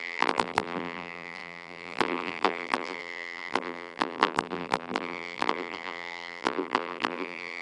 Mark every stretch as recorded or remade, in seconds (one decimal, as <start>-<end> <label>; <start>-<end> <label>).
0.0-7.6 remade